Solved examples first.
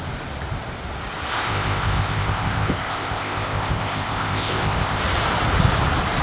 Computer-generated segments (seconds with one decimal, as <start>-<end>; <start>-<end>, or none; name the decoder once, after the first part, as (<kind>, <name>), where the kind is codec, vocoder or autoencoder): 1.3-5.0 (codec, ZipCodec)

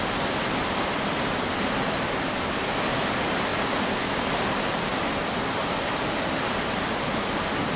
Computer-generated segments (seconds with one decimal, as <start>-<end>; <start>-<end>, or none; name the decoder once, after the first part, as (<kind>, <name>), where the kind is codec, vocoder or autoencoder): 3.5-4.8 (vocoder, BigVGAN v2)

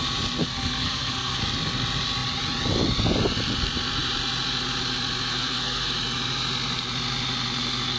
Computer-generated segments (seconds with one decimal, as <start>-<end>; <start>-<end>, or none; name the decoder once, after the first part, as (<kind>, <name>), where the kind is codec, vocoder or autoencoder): 0.4-1.4 (codec, SNAC); 5.3-5.9

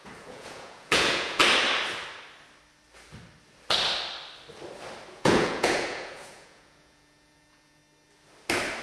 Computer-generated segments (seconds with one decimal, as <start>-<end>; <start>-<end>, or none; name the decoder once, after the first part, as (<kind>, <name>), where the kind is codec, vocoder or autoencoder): 0.0-1.4 (vocoder, Vocos); 5.1-7.8

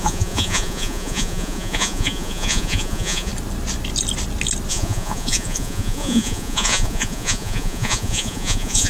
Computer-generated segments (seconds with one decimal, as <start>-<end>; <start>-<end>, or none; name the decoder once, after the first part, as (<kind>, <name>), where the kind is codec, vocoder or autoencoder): 0.0-3.3 (vocoder, Vocos); 4.7-8.9

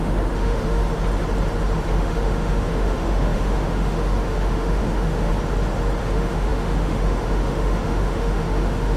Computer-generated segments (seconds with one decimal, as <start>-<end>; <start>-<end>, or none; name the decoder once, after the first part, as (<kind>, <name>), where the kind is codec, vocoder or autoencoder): 0.0-0.8 (autoencoder, DAC-VAE); 1.9-5.3; 6.0-9.0